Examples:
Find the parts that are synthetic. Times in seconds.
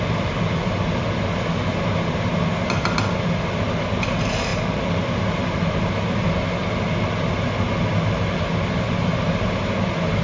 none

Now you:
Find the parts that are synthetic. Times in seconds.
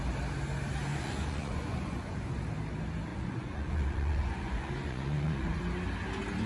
0.9-2.4 (vocoder, Vocos); 3.1-5.6